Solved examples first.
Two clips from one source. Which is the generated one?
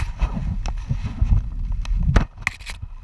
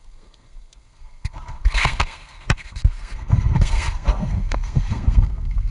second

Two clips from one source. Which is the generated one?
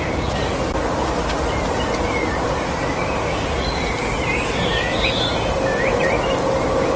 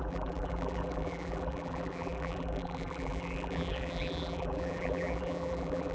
second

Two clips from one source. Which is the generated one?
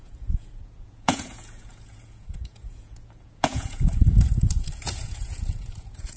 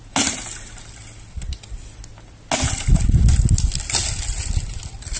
first